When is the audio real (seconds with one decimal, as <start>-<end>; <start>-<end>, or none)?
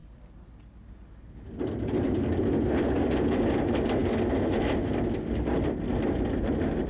0.0-6.9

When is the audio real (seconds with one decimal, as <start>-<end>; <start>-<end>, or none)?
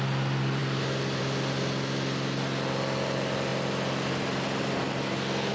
0.0-5.5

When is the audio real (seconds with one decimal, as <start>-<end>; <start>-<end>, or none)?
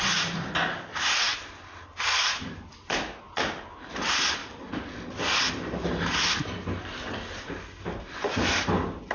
0.0-9.1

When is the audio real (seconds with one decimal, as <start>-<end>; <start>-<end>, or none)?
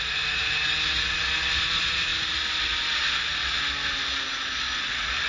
0.0-5.3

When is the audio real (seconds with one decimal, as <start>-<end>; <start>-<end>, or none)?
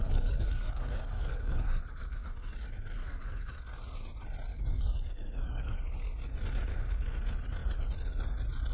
2.3-3.0; 3.5-4.5; 5.8-8.7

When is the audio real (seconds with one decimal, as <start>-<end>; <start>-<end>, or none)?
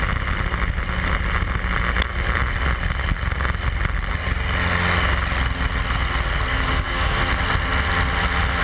0.0-6.5; 7.2-8.6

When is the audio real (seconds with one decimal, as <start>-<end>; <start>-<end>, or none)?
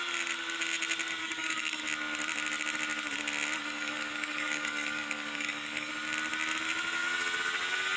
0.0-1.2; 1.8-3.6; 5.9-8.0